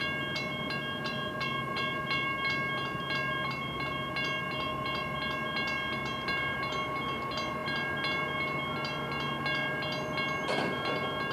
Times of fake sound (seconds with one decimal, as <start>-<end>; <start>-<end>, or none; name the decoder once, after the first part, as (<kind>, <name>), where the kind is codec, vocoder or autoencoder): none